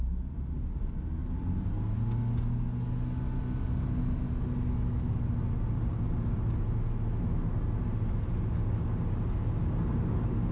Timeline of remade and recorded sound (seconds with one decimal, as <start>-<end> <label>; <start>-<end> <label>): 0.0-10.5 recorded